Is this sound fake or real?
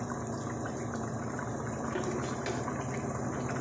real